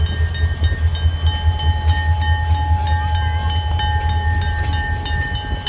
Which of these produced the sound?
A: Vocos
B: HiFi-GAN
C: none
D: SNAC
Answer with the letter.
C